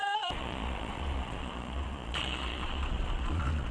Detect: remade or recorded remade